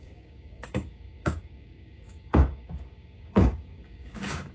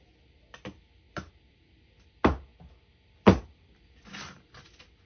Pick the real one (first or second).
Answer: second